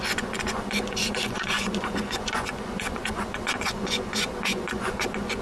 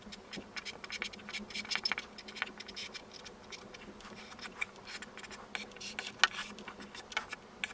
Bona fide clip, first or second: second